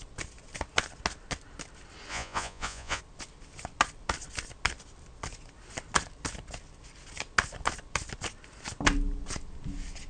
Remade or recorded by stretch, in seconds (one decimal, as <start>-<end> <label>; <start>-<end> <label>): 0.0-2.1 recorded; 2.1-3.0 remade; 3.0-10.1 recorded